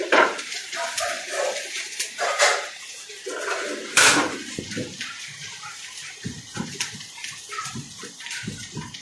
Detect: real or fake fake